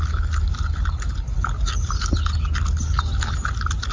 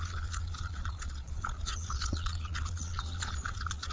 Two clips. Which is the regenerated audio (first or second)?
second